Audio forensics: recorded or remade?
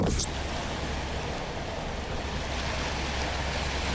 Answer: recorded